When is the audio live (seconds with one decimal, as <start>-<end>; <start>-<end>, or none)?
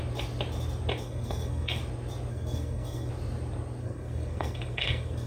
0.0-1.0; 1.8-2.3; 3.1-3.8